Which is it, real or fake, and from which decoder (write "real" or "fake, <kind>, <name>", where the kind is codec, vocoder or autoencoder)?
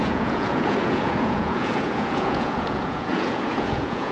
fake, vocoder, Vocos